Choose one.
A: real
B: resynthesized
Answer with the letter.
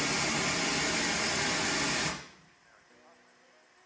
A